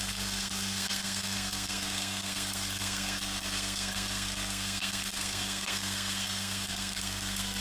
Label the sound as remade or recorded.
remade